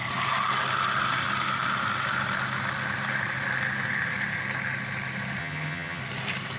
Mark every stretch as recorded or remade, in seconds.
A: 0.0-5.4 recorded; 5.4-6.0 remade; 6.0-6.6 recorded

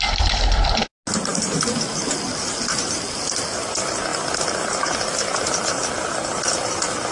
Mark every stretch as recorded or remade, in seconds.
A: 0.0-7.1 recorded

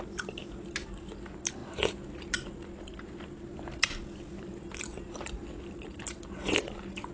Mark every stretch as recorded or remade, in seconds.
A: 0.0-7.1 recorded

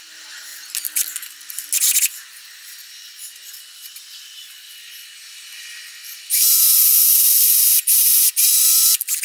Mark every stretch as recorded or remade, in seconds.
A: 0.0-6.7 recorded; 6.7-8.0 remade; 8.0-9.2 recorded

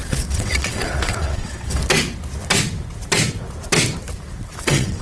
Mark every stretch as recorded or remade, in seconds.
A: 0.0-1.8 remade; 1.8-4.6 recorded; 4.6-5.0 remade

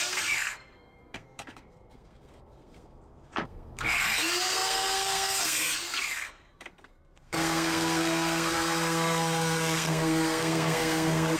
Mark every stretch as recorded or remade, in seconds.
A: 0.0-11.4 remade